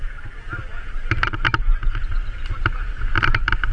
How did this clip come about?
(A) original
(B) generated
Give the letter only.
A